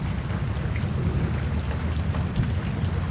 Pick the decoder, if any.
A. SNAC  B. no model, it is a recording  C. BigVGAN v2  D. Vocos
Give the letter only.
B